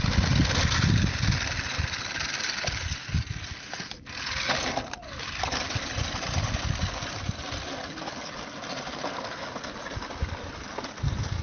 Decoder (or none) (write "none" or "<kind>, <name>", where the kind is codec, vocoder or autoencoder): none